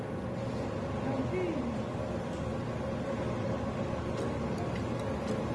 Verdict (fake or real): real